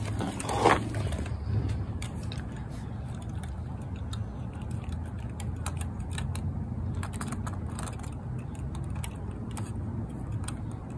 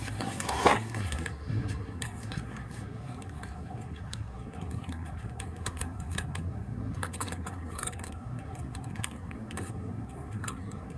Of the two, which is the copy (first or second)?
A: second